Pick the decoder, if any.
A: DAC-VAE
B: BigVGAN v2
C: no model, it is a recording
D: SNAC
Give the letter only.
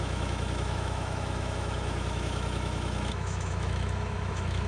A